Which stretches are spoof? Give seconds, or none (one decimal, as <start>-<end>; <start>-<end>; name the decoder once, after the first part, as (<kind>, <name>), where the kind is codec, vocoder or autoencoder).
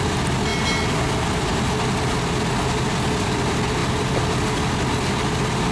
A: none